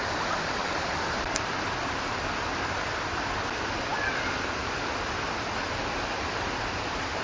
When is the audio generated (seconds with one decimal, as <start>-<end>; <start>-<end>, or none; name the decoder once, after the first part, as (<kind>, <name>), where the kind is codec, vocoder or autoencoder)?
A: none